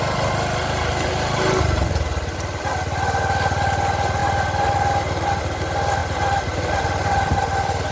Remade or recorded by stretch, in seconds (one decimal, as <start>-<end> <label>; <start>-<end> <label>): 0.0-7.9 recorded